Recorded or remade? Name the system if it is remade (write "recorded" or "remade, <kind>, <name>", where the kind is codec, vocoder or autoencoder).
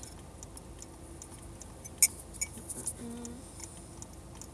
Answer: recorded